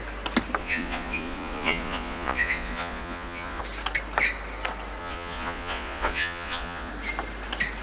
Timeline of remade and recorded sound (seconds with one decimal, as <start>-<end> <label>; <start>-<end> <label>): 0.0-0.6 recorded; 0.6-3.6 remade; 3.6-5.0 recorded; 5.0-6.9 remade; 6.9-7.8 recorded